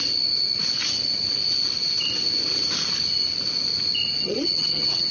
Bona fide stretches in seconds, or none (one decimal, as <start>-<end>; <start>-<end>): 0.0-4.2